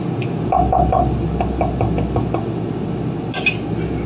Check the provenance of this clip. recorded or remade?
recorded